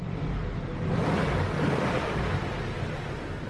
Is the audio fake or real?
real